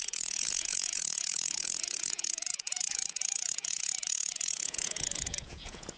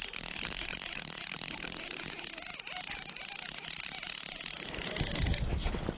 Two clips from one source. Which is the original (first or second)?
second